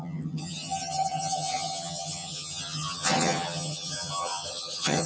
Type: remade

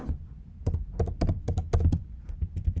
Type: recorded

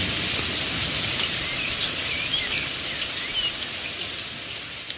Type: recorded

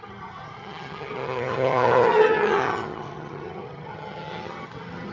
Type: remade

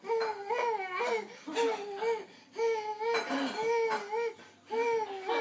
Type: recorded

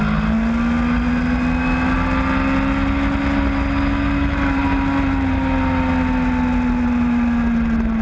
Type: recorded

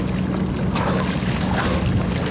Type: recorded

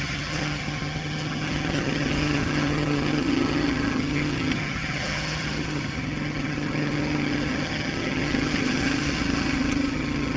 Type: remade